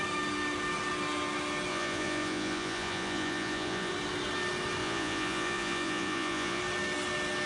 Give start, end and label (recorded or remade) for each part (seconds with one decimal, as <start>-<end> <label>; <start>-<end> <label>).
0.0-1.7 recorded; 1.7-3.9 remade; 3.9-4.8 recorded; 4.8-6.6 remade; 6.6-7.5 recorded